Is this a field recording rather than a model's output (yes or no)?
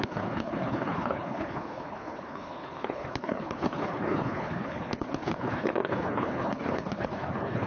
no